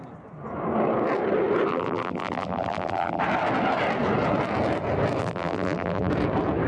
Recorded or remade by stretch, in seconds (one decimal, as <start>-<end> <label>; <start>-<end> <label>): 0.0-1.7 recorded; 1.7-3.2 remade; 3.2-5.2 recorded; 5.2-6.1 remade; 6.1-6.7 recorded